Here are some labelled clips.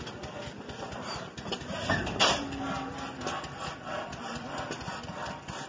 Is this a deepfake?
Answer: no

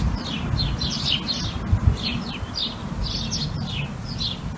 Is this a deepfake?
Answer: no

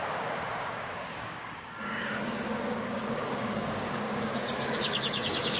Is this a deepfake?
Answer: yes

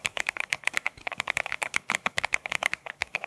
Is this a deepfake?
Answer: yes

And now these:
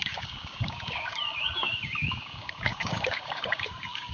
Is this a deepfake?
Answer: yes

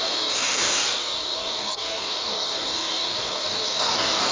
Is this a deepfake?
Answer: yes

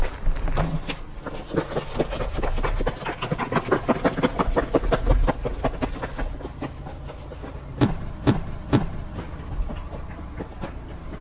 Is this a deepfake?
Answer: no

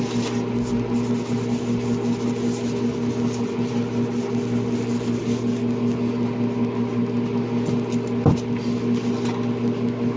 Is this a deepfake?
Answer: no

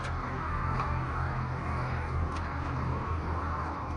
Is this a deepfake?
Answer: yes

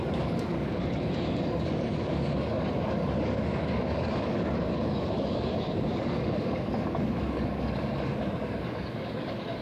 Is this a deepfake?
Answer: yes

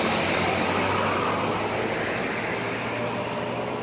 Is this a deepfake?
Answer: no